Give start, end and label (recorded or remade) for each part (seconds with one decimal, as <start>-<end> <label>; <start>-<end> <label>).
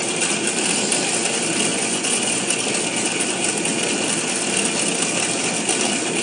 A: 0.0-1.7 recorded; 1.7-2.6 remade; 2.6-6.2 recorded